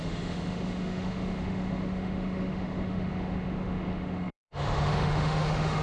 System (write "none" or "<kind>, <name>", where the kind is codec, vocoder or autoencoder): autoencoder, DAC-VAE